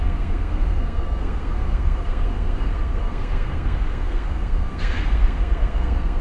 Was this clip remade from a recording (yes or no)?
yes